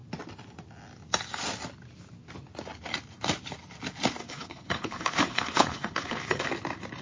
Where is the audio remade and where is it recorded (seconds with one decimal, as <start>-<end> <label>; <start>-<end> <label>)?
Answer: 0.0-4.2 recorded; 4.2-6.5 remade; 6.5-7.0 recorded